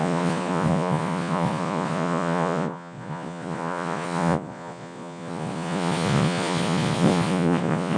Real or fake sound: fake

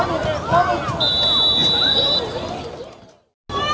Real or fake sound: real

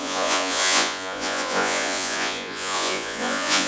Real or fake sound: fake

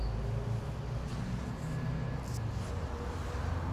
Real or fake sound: real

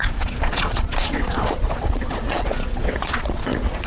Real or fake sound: fake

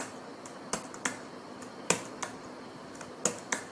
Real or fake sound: real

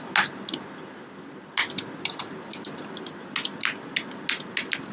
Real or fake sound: real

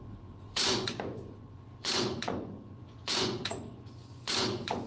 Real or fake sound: fake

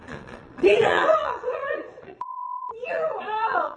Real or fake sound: fake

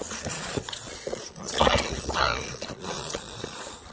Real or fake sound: fake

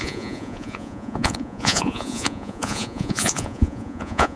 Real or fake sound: fake